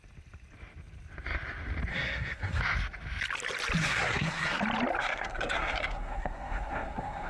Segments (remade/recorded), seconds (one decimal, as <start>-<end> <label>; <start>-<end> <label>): 0.0-1.9 recorded; 1.9-2.6 remade; 2.6-3.8 recorded; 3.8-4.6 remade; 4.6-5.0 recorded; 5.0-7.3 remade